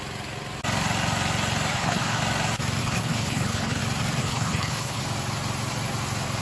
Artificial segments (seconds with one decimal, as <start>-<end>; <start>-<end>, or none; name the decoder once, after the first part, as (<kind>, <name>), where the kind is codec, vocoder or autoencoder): 1.7-2.2 (codec, HILCodec); 2.8-3.8; 4.2-5.0